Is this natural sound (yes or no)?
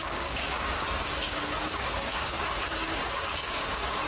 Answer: no